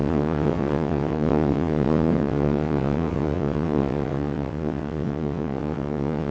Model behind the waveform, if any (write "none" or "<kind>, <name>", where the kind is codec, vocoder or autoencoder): vocoder, WaveNeXt